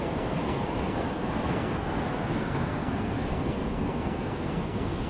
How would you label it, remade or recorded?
remade